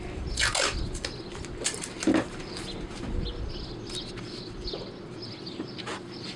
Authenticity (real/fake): real